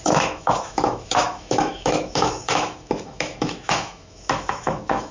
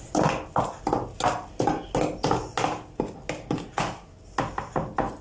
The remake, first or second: first